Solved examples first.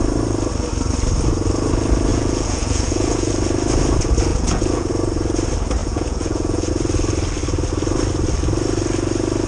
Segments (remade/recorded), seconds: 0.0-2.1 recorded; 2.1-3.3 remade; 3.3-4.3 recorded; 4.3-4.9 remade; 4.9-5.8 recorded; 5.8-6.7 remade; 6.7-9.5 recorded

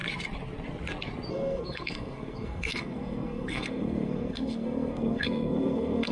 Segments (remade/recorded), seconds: 0.0-1.3 recorded; 1.3-6.1 remade

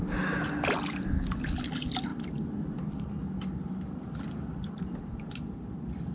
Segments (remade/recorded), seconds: 0.0-6.1 recorded

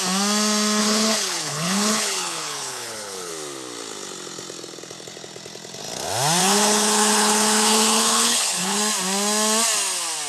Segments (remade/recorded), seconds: 0.0-0.8 recorded; 0.8-3.3 remade; 3.3-6.4 recorded; 6.4-8.8 remade; 8.8-10.3 recorded

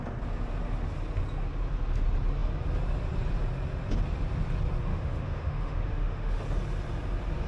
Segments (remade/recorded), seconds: 0.0-4.9 recorded; 4.9-6.4 remade; 6.4-7.5 recorded

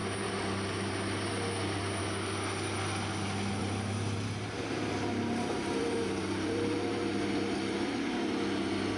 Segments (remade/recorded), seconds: 0.0-3.6 recorded; 3.6-8.2 remade; 8.2-9.0 recorded